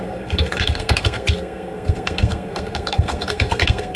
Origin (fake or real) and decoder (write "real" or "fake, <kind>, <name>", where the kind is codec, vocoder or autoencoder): fake, codec, SNAC